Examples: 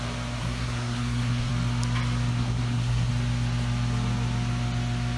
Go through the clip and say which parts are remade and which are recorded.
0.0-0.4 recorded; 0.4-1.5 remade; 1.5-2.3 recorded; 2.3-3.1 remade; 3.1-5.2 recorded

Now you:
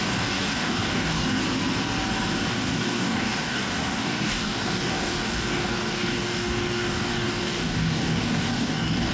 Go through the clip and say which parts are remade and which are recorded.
0.0-1.4 remade; 1.4-2.5 recorded; 2.5-9.1 remade

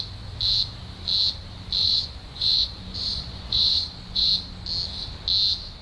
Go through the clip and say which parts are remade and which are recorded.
0.0-1.8 recorded; 1.8-4.3 remade; 4.3-5.8 recorded

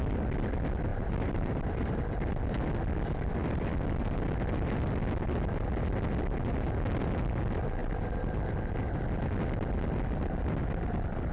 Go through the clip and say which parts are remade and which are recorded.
0.0-0.9 recorded; 0.9-2.0 remade; 2.0-11.3 recorded